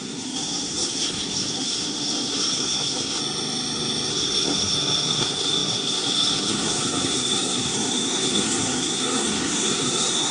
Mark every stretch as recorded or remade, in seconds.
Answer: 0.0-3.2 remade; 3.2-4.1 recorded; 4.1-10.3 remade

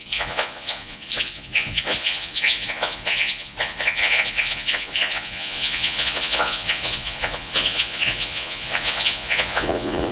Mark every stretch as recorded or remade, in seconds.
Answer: 0.0-10.1 remade

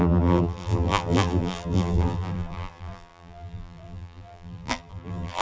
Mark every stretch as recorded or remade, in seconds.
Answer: 0.0-5.4 remade

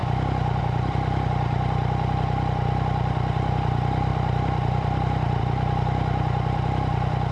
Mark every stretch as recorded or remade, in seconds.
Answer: 0.0-4.1 recorded; 4.1-5.4 remade; 5.4-7.3 recorded

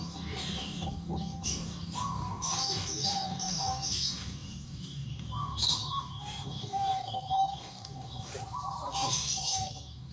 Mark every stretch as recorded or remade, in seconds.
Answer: 0.0-8.3 remade; 8.3-8.9 recorded; 8.9-10.1 remade

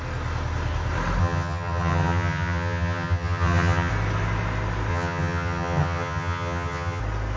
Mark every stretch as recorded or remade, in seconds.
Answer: 0.0-1.2 recorded; 1.2-3.9 remade; 3.9-4.9 recorded; 4.9-7.0 remade; 7.0-7.4 recorded

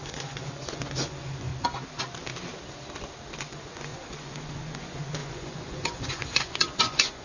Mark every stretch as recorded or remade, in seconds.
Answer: 0.0-1.5 remade; 1.5-3.4 recorded; 3.4-7.2 remade

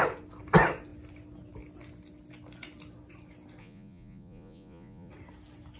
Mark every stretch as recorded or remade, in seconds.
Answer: 0.0-3.6 recorded; 3.6-5.1 remade; 5.1-5.8 recorded